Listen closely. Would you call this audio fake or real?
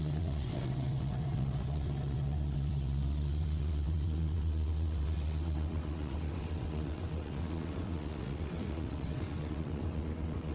fake